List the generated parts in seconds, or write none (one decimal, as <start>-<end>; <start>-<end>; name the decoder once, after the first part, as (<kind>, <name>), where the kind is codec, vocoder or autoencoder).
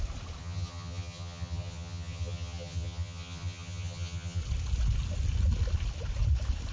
0.4-4.4 (vocoder, HiFi-GAN)